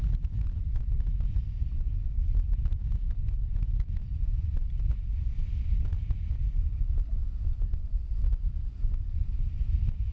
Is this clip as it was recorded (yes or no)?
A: yes